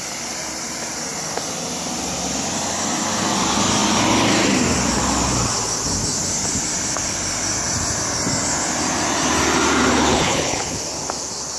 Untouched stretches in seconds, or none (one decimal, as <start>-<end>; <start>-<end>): 0.0-10.1; 10.8-11.6